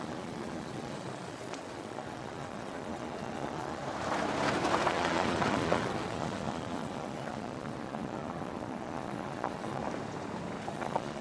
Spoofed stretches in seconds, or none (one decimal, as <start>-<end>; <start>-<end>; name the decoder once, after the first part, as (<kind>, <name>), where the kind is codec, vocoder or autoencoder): 0.0-3.8 (vocoder, Vocos); 4.9-9.8; 10.7-11.2